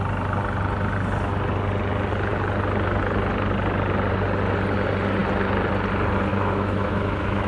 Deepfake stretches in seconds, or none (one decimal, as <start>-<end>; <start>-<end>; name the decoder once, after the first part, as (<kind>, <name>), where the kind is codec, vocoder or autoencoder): 6.3-7.5 (autoencoder, DAC-VAE)